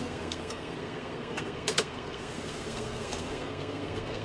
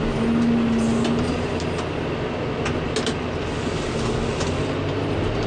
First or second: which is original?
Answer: second